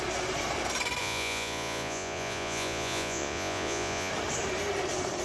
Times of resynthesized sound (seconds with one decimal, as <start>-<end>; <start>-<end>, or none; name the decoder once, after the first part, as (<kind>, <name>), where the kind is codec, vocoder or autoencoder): 1.0-4.1 (vocoder, Vocos)